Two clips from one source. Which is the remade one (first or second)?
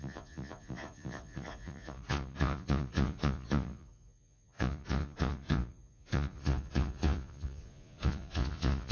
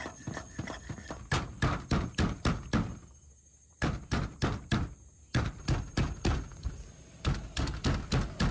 first